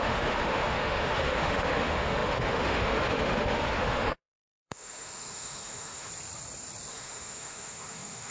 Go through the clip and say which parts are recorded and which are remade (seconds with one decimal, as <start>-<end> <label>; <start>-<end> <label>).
0.0-6.1 remade; 6.1-6.9 recorded; 6.9-8.3 remade